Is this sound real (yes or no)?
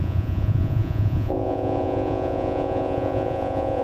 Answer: no